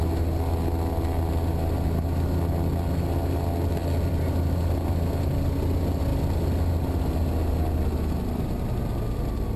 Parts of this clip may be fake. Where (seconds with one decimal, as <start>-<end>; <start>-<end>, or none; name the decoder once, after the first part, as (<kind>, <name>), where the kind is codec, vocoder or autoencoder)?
none

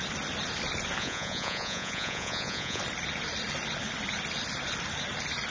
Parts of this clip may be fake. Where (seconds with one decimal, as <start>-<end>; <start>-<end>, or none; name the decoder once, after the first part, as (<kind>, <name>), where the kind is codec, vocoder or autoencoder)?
1.0-2.8 (vocoder, Vocos)

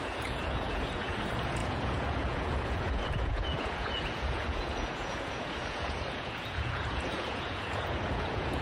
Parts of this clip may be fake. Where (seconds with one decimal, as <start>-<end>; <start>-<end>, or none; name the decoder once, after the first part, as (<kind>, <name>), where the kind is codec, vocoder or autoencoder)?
0.0-8.6 (vocoder, Vocos)

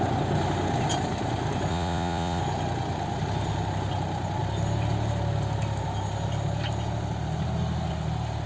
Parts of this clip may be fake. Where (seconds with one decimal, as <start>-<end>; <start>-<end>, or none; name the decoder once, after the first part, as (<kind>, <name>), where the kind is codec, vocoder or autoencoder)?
1.7-2.4 (vocoder, Vocos)

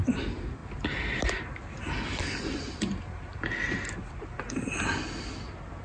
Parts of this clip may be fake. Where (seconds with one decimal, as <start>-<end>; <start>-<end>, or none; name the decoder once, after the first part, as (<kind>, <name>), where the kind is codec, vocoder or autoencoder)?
none